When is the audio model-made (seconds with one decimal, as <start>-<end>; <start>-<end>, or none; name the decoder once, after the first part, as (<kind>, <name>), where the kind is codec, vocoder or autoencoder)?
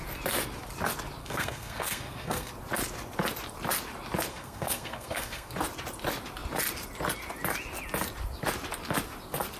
1.2-2.5 (codec, SNAC); 4.3-5.5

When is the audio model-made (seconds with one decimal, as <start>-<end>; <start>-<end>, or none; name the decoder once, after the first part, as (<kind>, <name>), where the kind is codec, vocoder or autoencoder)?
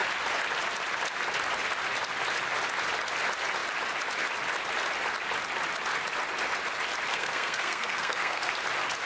7.1-8.5 (codec, SNAC)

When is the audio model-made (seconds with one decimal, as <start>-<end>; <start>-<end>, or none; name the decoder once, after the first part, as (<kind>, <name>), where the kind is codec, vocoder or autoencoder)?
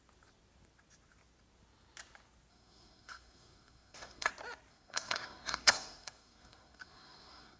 2.5-4.3 (codec, SNAC); 4.7-7.6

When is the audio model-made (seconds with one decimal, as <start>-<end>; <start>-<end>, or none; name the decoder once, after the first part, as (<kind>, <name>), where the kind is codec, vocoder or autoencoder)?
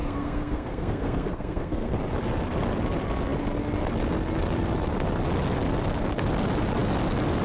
0.0-1.9 (codec, SNAC)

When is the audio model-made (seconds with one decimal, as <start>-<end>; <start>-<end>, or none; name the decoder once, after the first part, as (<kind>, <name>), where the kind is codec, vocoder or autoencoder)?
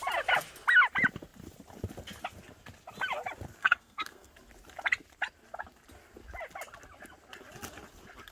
3.6-4.3 (codec, SNAC)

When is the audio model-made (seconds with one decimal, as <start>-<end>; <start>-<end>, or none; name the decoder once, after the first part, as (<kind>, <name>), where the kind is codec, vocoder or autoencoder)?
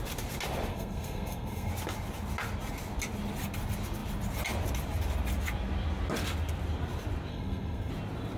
0.7-1.7 (codec, SNAC); 7.3-7.9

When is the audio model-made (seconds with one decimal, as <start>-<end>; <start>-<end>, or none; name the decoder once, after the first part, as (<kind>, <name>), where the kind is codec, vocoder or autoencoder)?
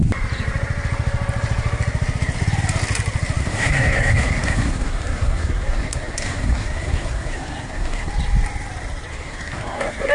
3.4-8.1 (codec, SNAC); 9.1-10.1